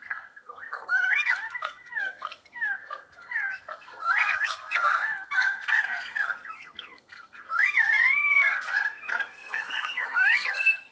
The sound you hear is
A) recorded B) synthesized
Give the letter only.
B